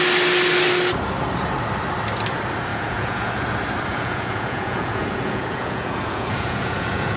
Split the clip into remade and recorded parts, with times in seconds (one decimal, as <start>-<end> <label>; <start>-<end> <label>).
0.0-2.7 recorded; 2.7-3.3 remade; 3.3-3.9 recorded; 3.9-7.2 remade